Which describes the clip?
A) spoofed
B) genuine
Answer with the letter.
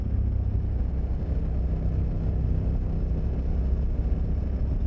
B